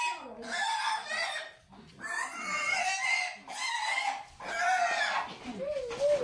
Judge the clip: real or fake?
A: real